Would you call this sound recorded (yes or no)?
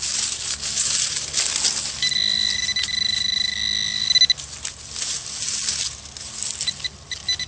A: yes